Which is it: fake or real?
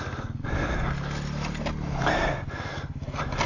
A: real